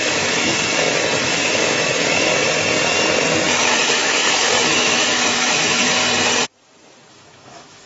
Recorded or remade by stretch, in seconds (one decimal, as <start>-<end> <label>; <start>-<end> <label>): 0.0-0.5 remade; 0.5-1.2 recorded; 1.2-2.3 remade; 2.3-3.6 recorded; 3.6-6.0 remade; 6.0-7.1 recorded; 7.1-7.9 remade